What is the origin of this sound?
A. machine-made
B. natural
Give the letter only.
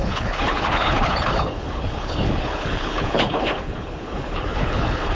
A